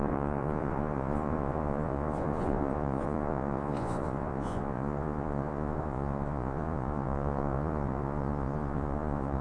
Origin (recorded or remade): remade